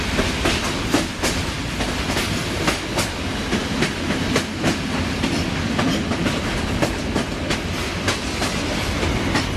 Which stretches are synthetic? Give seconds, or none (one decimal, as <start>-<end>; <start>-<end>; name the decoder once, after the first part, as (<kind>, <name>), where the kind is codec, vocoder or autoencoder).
none

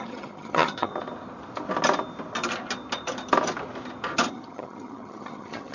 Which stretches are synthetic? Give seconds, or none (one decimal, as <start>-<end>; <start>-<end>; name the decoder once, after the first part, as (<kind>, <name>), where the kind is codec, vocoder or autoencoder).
0.0-0.9 (vocoder, HiFi-GAN); 4.3-5.7

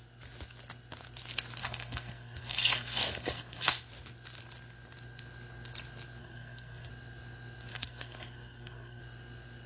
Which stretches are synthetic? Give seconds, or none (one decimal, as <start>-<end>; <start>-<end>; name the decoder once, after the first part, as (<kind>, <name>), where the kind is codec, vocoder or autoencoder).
1.6-3.8 (codec, SNAC); 6.2-6.9; 7.7-9.0

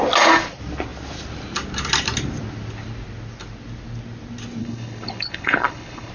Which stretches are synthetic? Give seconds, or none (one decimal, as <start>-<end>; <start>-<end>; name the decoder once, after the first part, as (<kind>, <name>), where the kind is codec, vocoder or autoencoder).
4.6-6.1 (codec, HILCodec)

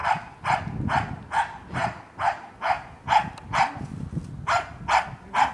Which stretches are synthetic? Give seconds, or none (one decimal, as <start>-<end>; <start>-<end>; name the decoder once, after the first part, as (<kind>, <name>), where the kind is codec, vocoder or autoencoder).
none